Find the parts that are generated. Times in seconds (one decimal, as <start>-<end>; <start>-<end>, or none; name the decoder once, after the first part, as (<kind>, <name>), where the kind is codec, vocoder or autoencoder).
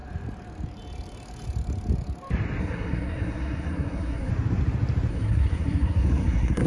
2.6-4.3 (codec, SNAC); 5.1-6.7